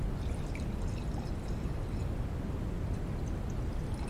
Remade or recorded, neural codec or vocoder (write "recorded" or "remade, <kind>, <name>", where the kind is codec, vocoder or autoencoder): recorded